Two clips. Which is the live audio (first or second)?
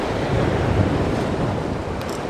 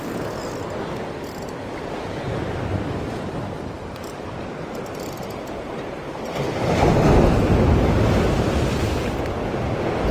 second